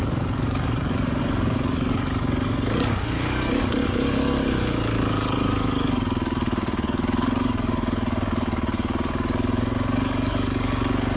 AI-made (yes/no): yes